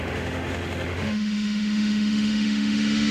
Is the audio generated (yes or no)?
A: yes